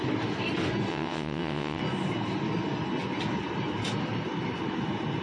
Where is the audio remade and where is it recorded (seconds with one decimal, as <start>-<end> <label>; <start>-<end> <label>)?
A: 0.0-0.9 recorded; 0.9-1.8 remade; 1.8-5.2 recorded